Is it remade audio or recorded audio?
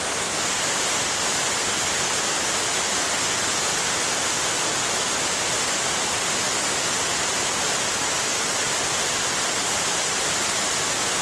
recorded